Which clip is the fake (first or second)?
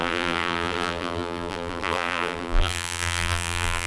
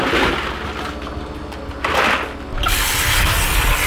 first